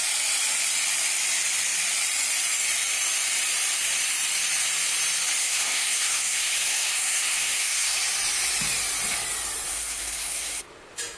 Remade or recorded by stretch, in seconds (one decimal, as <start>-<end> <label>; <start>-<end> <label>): 0.0-5.4 recorded; 5.4-8.0 remade; 8.0-9.7 recorded; 9.7-10.6 remade; 10.6-11.2 recorded

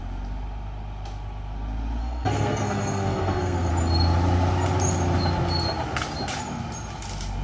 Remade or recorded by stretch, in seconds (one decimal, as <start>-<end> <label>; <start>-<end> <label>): 0.0-2.0 recorded; 2.0-3.7 remade; 3.7-7.4 recorded

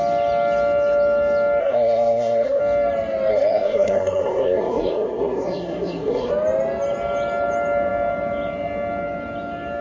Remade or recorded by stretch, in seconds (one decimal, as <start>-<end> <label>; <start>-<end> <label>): 0.0-1.6 recorded; 1.6-2.6 remade; 2.6-3.3 recorded; 3.3-6.3 remade; 6.3-9.8 recorded

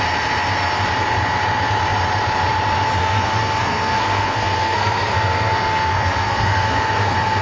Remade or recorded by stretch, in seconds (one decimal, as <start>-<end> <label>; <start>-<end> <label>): 0.0-3.0 recorded; 3.0-7.4 remade

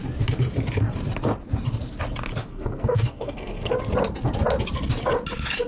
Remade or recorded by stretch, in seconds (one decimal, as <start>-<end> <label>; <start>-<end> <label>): 0.0-2.4 recorded; 2.4-3.7 remade; 3.7-5.7 recorded

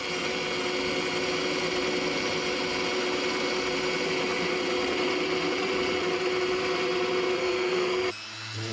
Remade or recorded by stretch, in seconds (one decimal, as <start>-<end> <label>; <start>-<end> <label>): 0.0-7.4 recorded; 7.4-8.1 remade; 8.1-8.7 recorded

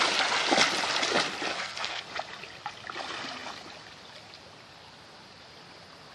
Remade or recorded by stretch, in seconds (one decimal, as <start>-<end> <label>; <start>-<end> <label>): 0.0-1.5 recorded; 1.5-2.0 remade; 2.0-6.1 recorded

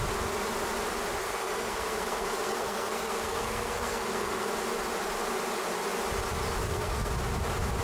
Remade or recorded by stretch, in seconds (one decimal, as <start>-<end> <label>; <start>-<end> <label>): 0.0-1.2 recorded; 1.2-4.5 remade; 4.5-6.6 recorded; 6.6-7.1 remade; 7.1-7.8 recorded